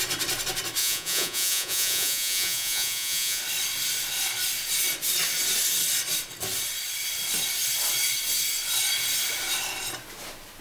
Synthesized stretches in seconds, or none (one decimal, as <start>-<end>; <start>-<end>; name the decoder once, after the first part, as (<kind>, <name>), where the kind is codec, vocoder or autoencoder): 0.8-3.4 (vocoder, Vocos)